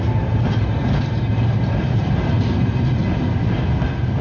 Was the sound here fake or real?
real